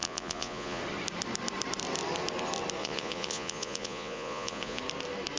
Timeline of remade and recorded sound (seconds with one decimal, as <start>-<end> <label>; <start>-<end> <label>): 0.0-0.8 remade; 0.8-2.8 recorded; 2.8-4.8 remade; 4.8-5.4 recorded